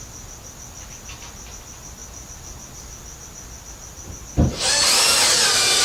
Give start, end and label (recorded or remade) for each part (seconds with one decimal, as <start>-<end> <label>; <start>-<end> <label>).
0.0-5.8 recorded